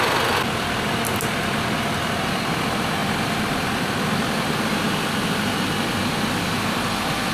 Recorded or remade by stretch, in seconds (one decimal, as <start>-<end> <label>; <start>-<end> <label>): 0.0-3.0 recorded; 3.0-3.9 remade; 3.9-7.3 recorded